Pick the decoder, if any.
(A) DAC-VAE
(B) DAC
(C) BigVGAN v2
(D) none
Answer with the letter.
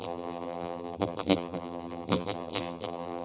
C